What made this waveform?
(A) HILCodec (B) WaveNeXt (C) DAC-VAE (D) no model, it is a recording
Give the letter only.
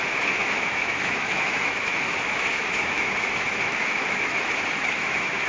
C